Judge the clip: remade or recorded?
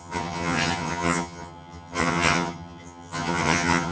remade